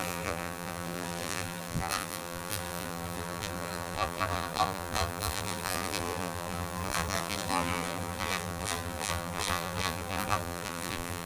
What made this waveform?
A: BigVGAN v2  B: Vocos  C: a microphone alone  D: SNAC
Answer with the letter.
A